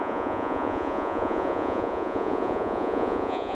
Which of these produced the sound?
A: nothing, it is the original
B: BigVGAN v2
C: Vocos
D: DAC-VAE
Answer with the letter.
C